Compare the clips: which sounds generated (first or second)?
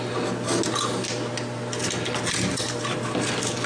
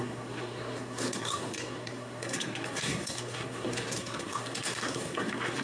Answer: second